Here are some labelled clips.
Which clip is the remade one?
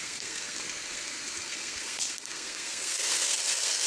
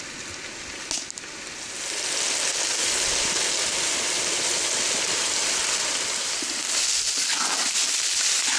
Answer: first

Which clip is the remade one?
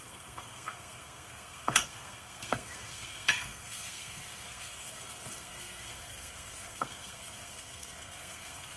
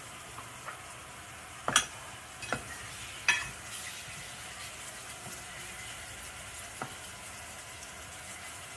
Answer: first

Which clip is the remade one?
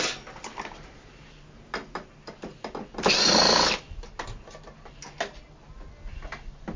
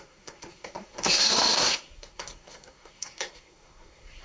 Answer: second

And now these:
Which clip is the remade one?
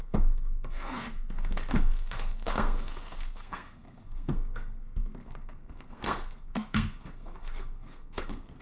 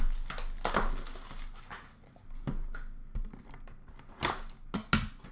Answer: first